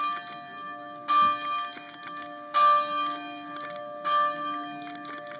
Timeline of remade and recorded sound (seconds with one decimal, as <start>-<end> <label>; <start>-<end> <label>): 0.0-5.4 recorded